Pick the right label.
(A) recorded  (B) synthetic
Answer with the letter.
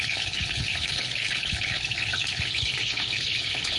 B